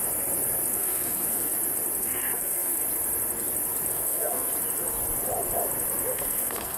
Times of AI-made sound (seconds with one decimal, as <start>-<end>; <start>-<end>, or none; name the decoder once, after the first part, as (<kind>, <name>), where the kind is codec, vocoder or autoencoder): 0.7-1.5 (codec, SNAC); 2.0-2.8; 3.9-4.5; 6.1-6.8